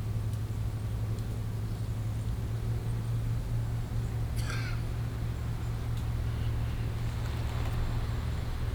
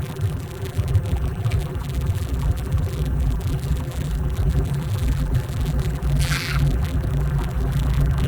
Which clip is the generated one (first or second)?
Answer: second